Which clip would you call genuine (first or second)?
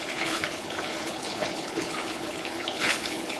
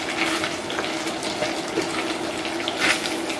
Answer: second